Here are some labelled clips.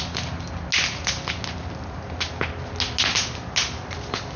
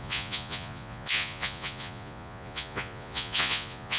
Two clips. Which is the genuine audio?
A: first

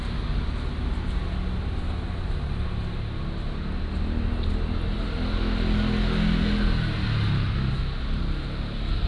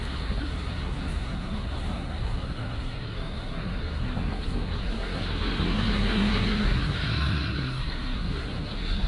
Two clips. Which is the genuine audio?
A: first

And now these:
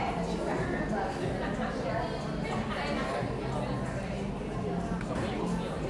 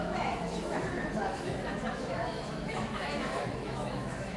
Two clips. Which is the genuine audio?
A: first